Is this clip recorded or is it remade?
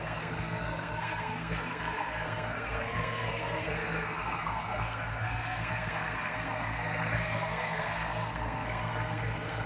remade